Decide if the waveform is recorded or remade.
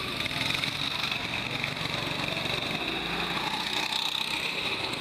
recorded